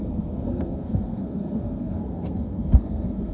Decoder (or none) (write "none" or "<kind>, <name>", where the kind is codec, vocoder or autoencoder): codec, SNAC